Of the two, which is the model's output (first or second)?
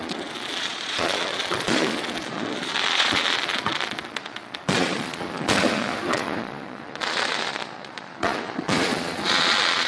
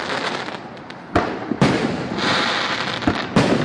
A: first